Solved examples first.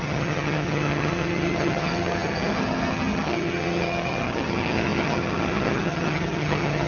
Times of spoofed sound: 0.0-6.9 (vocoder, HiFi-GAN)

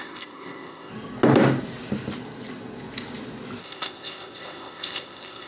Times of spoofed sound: 0.0-0.9 (codec, ZipCodec); 3.6-5.5

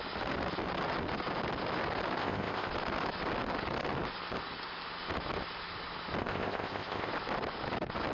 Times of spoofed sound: 2.2-2.7 (codec, ZipCodec); 6.2-7.1

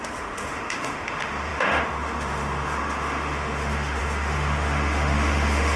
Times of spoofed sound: 0.0-5.8 (autoencoder, DAC-VAE)

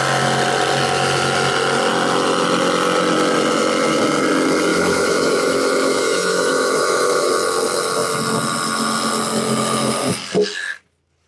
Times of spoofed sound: 4.7-7.3 (autoencoder, DAC-VAE)

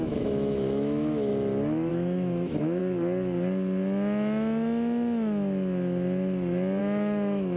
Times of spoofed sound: 0.0-1.3 (autoencoder, DAC-VAE); 1.9-2.8; 6.8-7.6

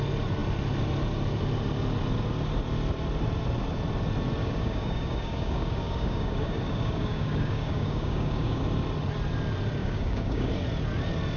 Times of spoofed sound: 4.4-8.6 (codec, DAC); 9.8-10.5